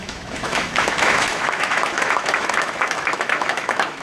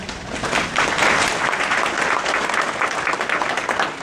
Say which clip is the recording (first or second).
second